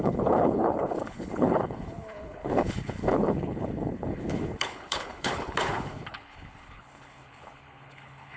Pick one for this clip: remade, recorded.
remade